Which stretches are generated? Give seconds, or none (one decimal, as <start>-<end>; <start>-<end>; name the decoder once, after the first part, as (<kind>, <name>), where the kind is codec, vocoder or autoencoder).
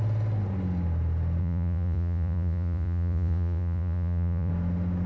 1.4-4.5 (vocoder, Vocos)